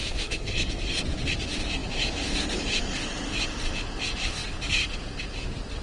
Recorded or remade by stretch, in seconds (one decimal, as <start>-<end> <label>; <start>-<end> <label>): 0.0-1.0 remade; 1.0-5.8 recorded